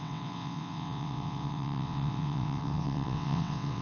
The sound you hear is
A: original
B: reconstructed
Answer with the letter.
B